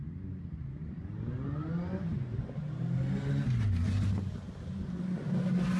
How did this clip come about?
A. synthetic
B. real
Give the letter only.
B